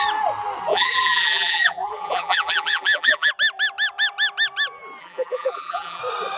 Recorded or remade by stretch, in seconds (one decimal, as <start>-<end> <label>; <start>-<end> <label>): 0.0-0.7 recorded; 0.7-3.3 remade; 3.3-5.0 recorded; 5.0-6.0 remade; 6.0-6.4 recorded